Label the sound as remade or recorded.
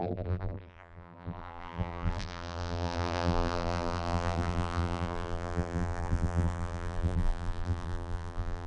remade